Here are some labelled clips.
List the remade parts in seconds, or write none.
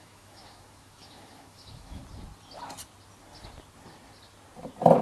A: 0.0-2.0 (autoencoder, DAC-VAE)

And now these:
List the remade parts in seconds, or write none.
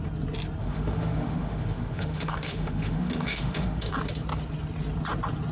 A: 0.6-3.9 (autoencoder, DAC-VAE)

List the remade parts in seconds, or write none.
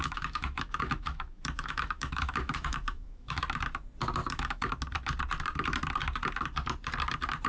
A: 0.0-3.4 (autoencoder, DAC-VAE); 4.2-4.7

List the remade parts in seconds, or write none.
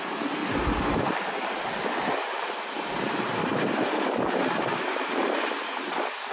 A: none